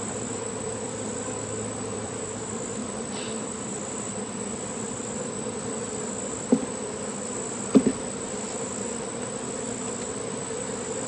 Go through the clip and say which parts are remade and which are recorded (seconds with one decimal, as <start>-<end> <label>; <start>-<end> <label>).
0.0-2.8 remade; 2.8-3.4 recorded; 3.4-6.6 remade; 6.6-10.4 recorded; 10.4-11.1 remade